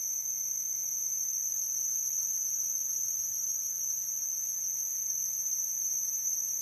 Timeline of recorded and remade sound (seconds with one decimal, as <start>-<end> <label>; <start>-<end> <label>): 0.0-6.6 recorded